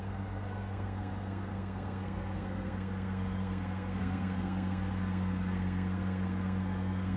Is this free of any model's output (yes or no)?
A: no